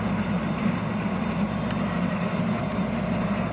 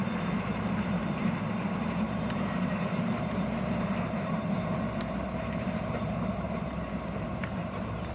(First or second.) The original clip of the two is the first